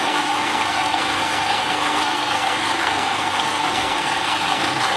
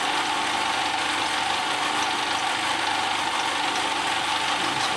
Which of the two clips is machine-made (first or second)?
first